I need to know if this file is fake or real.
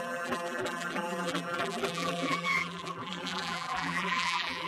fake